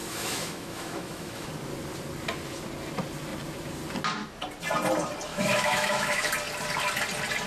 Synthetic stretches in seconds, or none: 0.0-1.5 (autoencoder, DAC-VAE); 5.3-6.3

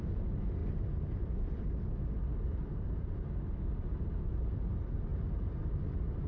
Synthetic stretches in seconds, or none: none

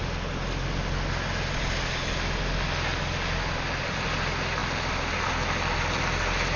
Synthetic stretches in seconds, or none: none

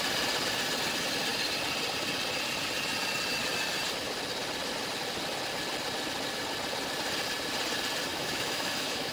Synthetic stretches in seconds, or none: 8.1-9.1 (autoencoder, DAC-VAE)

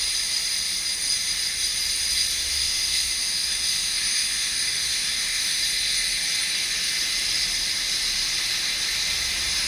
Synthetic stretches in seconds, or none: 2.5-5.6 (autoencoder, DAC-VAE)

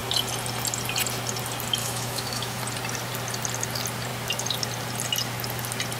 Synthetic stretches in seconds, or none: 1.8-2.6 (autoencoder, DAC-VAE)